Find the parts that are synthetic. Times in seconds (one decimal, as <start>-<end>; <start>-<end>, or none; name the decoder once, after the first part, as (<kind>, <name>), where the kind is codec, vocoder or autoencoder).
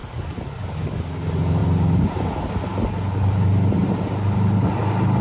0.0-1.0 (codec, DAC)